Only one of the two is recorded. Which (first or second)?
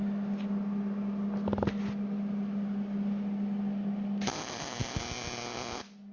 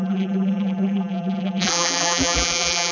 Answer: first